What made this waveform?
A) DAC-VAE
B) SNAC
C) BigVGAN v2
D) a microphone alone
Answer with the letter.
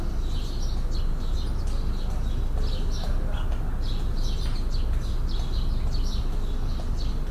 D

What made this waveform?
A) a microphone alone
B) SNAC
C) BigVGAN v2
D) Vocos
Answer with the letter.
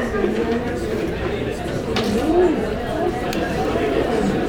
C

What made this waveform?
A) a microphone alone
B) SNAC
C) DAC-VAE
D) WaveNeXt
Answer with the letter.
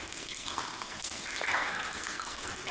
B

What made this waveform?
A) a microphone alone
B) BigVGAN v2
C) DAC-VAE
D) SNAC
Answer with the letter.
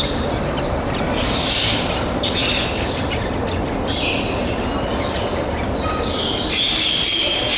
A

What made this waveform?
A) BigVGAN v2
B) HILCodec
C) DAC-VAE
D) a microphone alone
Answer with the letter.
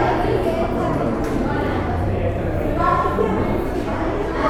A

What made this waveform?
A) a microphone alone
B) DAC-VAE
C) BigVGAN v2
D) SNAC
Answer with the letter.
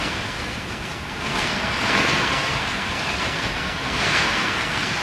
D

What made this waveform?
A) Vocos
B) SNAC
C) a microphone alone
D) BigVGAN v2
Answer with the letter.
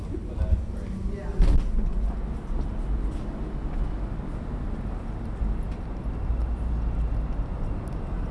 C